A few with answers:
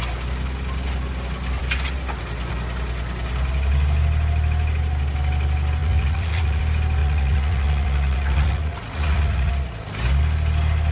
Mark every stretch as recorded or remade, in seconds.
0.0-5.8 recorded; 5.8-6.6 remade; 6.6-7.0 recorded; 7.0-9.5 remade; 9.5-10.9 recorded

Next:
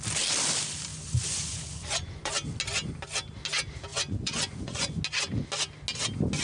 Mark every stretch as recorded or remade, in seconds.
0.0-0.9 recorded; 0.9-2.3 remade; 2.3-3.9 recorded; 3.9-5.0 remade; 5.0-6.4 recorded

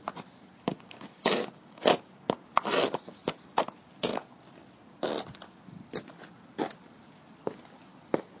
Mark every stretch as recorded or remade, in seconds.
0.0-0.7 recorded; 0.7-1.9 remade; 1.9-8.4 recorded

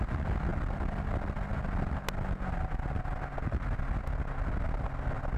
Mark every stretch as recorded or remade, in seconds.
0.0-5.4 recorded

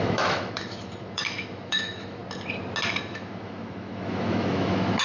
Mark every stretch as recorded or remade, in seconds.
0.0-2.2 remade; 2.2-3.1 recorded; 3.1-5.0 remade

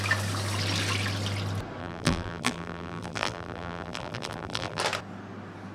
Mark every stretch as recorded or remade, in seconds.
0.0-1.8 recorded; 1.8-4.8 remade; 4.8-5.7 recorded